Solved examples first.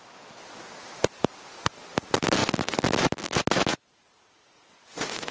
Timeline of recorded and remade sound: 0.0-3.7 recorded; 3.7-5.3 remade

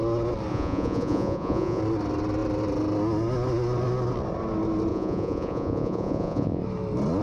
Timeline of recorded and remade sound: 0.0-0.5 recorded; 0.5-1.8 remade; 1.8-4.9 recorded; 4.9-6.6 remade; 6.6-7.2 recorded